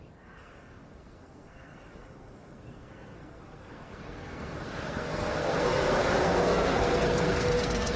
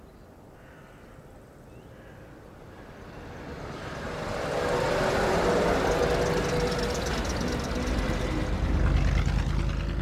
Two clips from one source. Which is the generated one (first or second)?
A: first